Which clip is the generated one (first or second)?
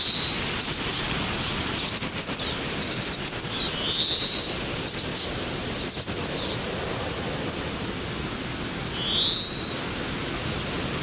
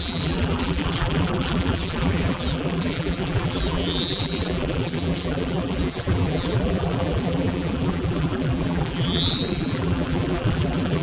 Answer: second